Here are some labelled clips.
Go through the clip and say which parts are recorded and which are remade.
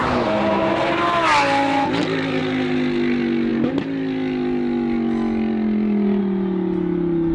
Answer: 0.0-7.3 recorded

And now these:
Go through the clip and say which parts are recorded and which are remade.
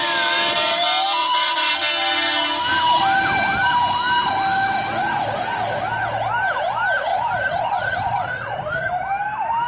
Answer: 0.0-1.2 recorded; 1.2-1.7 remade; 1.7-7.1 recorded; 7.1-8.9 remade; 8.9-9.7 recorded